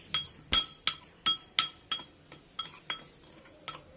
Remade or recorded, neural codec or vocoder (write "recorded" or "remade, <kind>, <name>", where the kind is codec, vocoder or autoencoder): recorded